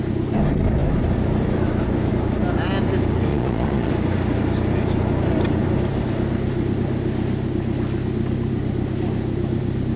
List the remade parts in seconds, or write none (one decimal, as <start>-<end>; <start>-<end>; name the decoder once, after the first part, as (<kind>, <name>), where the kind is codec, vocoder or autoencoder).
3.3-3.9 (vocoder, Vocos)